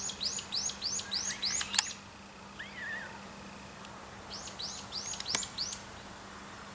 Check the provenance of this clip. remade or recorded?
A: recorded